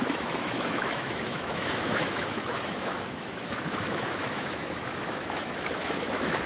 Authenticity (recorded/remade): remade